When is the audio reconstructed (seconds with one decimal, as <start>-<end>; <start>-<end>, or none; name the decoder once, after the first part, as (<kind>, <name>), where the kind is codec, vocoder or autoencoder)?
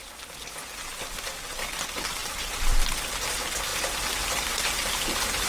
2.2-2.8 (vocoder, BigVGAN v2)